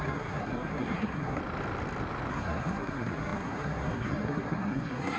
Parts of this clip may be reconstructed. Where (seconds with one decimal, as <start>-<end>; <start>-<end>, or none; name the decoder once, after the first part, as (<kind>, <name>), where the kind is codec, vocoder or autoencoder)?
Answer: 0.0-1.4 (codec, SNAC); 2.3-5.2